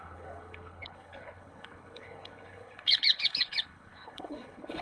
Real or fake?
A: fake